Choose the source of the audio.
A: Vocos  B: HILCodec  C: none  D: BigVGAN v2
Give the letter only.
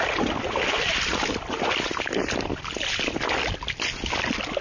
C